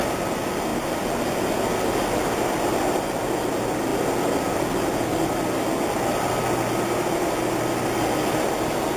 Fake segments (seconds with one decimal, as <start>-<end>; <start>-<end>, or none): none